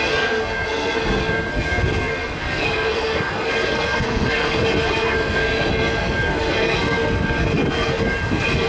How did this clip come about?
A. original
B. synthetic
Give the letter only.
B